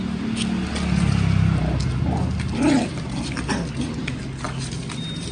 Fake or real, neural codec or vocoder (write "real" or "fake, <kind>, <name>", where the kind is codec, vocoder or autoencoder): real